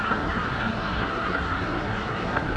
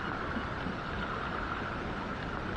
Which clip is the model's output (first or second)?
first